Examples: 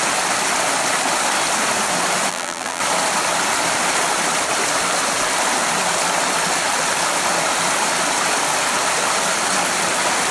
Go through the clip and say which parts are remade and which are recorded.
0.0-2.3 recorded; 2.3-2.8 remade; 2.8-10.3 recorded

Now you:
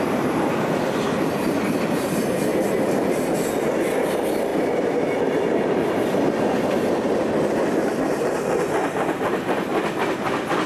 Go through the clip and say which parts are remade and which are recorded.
0.0-10.7 recorded

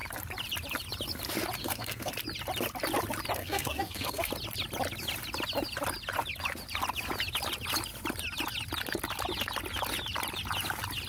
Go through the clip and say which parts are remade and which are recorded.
0.0-1.6 recorded; 1.6-2.1 remade; 2.1-3.4 recorded; 3.4-4.3 remade; 4.3-11.1 recorded

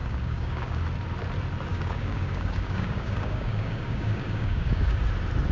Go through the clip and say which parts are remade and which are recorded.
0.0-0.8 remade; 0.8-1.7 recorded; 1.7-5.0 remade; 5.0-5.5 recorded

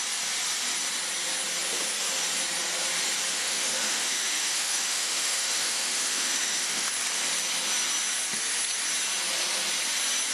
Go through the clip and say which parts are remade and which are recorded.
0.0-3.3 recorded; 3.3-6.9 remade; 6.9-10.3 recorded

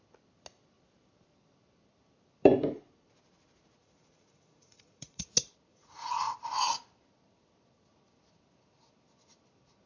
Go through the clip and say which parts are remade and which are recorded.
0.0-3.8 recorded; 3.8-5.3 remade; 5.3-5.7 recorded; 5.7-6.4 remade; 6.4-9.9 recorded

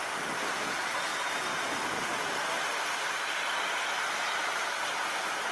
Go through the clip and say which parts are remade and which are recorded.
0.0-5.5 recorded